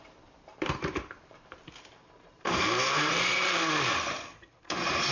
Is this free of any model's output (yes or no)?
no